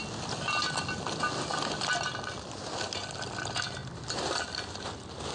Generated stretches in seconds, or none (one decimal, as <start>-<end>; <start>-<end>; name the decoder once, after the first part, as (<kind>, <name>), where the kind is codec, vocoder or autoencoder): none